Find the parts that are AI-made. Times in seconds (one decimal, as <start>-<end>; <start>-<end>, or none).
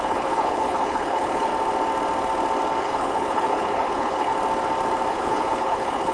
0.0-1.5; 2.8-4.3; 5.1-6.1